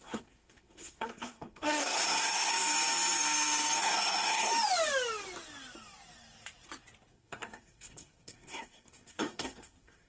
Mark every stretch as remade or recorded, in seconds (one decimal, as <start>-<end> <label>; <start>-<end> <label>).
0.0-2.5 remade; 2.5-3.8 recorded; 3.8-4.5 remade; 4.5-7.1 recorded; 7.1-10.1 remade